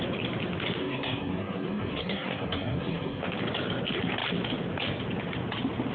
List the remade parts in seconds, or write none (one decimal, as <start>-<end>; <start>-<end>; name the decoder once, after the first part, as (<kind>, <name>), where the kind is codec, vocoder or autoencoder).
0.8-3.2 (codec, SNAC)